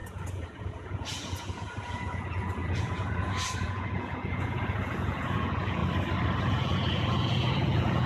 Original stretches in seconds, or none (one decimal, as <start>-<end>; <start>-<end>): 5.8-6.4